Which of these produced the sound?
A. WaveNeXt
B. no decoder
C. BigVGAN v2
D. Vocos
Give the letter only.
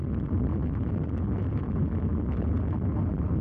B